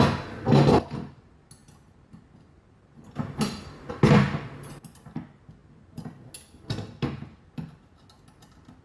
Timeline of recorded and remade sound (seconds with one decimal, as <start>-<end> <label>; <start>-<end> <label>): 0.0-8.8 recorded